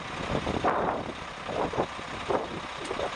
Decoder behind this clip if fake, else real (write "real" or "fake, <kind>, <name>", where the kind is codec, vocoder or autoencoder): real